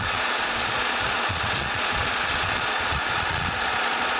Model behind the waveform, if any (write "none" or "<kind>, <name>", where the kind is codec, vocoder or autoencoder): vocoder, Vocos